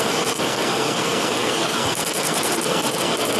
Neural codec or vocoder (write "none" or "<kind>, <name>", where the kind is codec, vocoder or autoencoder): codec, SNAC